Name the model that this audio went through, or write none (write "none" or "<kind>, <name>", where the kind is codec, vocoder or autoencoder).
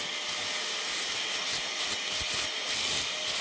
none